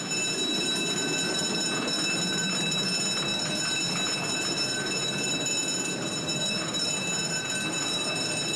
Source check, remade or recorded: recorded